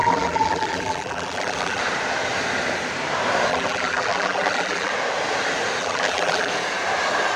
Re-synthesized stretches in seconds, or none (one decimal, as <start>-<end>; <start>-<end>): 0.0-1.8; 3.5-4.9; 5.8-6.5